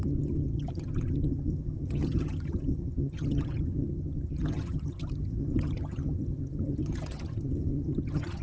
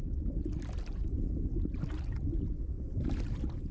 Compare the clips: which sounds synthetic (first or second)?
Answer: first